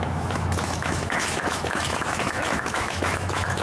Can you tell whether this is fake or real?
fake